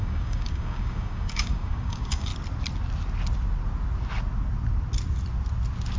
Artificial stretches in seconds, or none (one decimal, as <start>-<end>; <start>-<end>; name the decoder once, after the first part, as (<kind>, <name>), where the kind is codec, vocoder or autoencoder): 0.0-2.3 (codec, DAC)